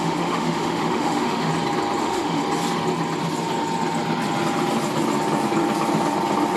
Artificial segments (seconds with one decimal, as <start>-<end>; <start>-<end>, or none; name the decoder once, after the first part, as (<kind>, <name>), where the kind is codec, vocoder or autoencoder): 0.0-1.5 (autoencoder, DAC-VAE); 2.0-2.4